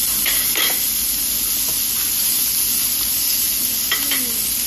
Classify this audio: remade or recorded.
recorded